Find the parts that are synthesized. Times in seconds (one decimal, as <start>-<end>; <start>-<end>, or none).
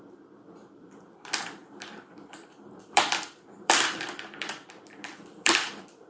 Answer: 0.0-6.1